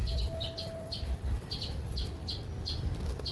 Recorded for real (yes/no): yes